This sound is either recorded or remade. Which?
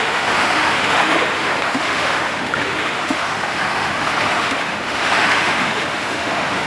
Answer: remade